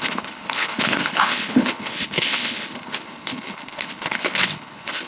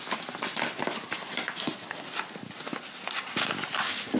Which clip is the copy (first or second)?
first